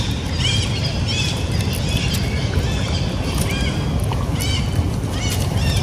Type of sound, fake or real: real